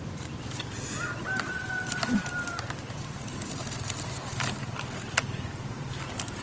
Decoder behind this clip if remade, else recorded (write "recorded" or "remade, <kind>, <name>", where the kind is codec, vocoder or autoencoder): remade, vocoder, BigVGAN v2